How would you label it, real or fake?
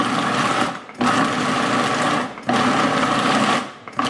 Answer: real